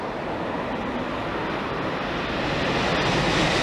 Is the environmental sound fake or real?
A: real